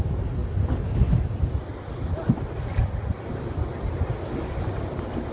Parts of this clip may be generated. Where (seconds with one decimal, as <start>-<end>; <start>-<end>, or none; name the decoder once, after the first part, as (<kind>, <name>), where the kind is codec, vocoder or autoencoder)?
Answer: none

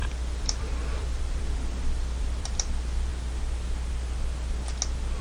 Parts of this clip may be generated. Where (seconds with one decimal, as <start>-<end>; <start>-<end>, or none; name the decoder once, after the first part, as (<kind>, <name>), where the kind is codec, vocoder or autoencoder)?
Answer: 0.0-3.1 (vocoder, BigVGAN v2)

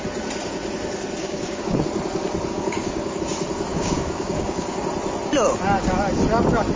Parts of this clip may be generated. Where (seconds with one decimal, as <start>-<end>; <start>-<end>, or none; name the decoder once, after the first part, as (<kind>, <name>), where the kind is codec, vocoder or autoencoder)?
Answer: 1.2-1.8 (codec, DAC); 2.5-3.2; 3.7-4.8

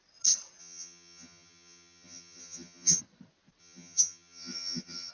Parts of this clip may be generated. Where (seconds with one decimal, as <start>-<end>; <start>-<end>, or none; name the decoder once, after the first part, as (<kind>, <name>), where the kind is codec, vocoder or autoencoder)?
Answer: 0.6-3.0 (vocoder, HiFi-GAN); 3.6-5.1

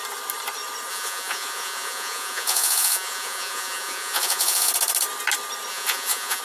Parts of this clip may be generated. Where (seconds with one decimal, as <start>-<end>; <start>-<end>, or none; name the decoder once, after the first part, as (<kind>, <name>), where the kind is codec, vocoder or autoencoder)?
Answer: 0.9-4.7 (vocoder, Vocos); 5.7-6.4

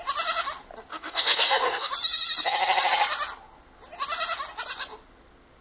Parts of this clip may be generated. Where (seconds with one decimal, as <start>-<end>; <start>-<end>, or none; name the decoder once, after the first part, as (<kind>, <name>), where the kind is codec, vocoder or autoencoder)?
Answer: 0.9-1.9 (codec, DAC)

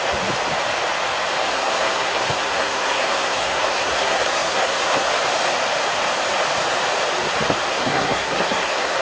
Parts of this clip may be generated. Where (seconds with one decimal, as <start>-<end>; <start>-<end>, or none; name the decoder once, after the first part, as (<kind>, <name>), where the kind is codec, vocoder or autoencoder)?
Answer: 1.4-5.1 (codec, SNAC); 7.7-9.0

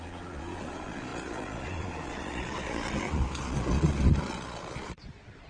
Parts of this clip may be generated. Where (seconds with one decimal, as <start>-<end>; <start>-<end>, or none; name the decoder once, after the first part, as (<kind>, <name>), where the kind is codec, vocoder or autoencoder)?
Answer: 0.0-5.5 (vocoder, Vocos)